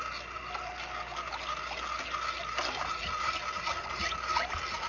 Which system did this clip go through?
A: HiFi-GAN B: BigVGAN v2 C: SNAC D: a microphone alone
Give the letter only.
D